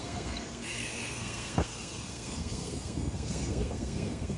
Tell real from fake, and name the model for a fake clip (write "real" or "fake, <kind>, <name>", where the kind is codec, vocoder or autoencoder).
fake, codec, SNAC